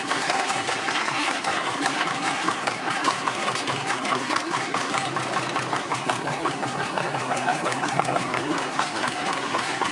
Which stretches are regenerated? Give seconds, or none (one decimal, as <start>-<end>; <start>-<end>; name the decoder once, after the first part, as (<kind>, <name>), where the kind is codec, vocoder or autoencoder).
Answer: 0.0-5.1 (codec, SNAC); 5.7-9.9

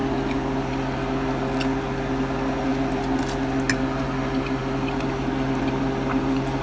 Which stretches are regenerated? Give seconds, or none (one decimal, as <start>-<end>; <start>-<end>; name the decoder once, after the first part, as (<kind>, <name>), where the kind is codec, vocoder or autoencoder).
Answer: none